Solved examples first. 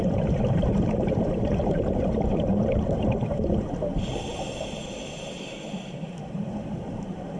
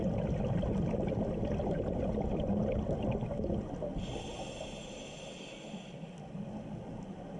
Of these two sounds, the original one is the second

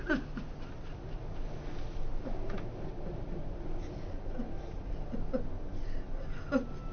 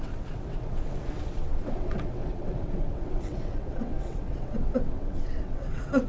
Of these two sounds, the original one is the first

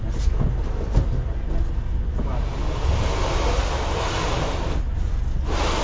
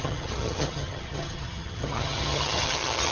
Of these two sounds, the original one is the first